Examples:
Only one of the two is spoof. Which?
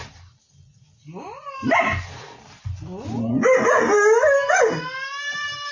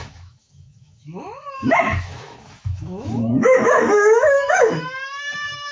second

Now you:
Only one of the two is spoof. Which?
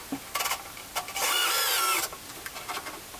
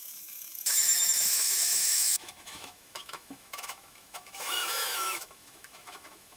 second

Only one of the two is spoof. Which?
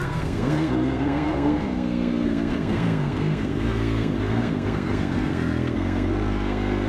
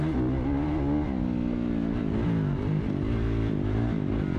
first